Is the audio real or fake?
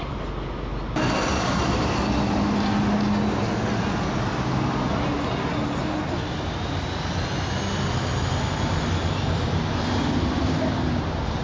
real